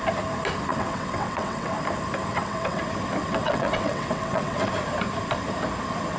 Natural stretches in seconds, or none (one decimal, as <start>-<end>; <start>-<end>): 0.0-0.7; 1.7-2.3; 2.8-3.2; 4.7-6.2

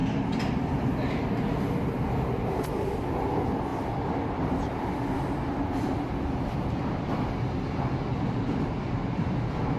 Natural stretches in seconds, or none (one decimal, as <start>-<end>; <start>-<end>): 0.0-3.7; 5.5-8.1

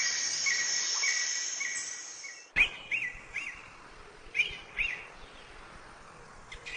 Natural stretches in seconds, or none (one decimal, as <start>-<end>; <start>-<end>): none

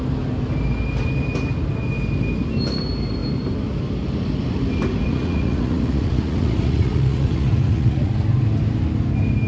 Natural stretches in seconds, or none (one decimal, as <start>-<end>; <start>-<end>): 0.0-5.0; 8.1-9.5

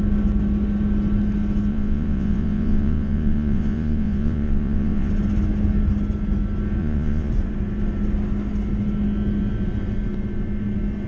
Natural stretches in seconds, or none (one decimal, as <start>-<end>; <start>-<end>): 0.0-1.7; 5.1-6.8; 7.3-11.1

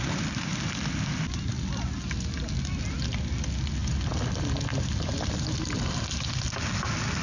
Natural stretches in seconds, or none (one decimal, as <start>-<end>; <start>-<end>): 0.0-7.2

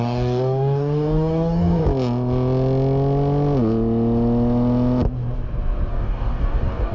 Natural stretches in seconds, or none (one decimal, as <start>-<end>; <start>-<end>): 1.8-5.9

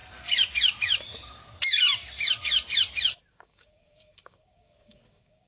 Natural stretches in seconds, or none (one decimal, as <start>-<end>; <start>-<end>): 0.0-3.3